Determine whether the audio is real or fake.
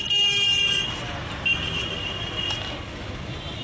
real